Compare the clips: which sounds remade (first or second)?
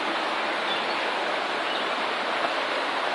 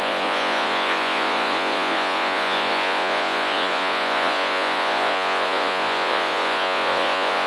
second